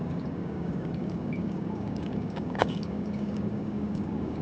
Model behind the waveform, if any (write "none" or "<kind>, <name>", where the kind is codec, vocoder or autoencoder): codec, DAC